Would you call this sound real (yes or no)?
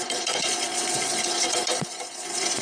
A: no